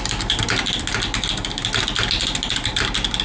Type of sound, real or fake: real